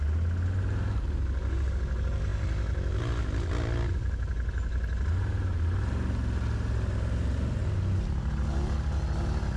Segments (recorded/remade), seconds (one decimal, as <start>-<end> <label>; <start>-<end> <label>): 0.0-9.6 recorded